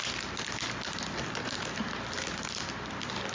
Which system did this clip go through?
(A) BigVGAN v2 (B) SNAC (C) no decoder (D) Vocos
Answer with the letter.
C